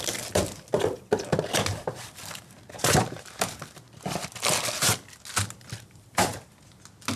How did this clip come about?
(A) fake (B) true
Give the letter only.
B